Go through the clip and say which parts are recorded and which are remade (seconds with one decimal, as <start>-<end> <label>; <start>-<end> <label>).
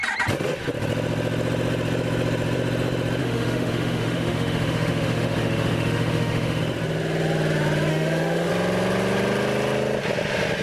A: 0.0-3.2 recorded; 3.2-6.6 remade; 6.6-7.9 recorded; 7.9-8.5 remade; 8.5-10.6 recorded